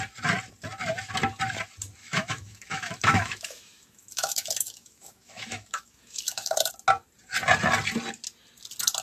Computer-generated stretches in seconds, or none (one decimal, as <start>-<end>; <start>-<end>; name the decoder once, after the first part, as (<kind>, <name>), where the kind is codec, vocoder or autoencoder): 2.0-6.7 (autoencoder, DAC-VAE)